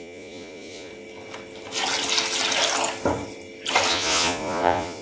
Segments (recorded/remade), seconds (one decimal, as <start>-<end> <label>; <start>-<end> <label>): 0.0-0.9 remade; 0.9-3.9 recorded; 3.9-5.0 remade